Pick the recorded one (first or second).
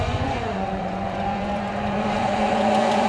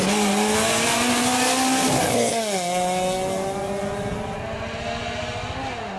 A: second